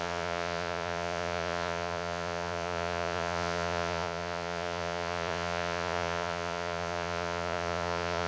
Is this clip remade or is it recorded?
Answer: remade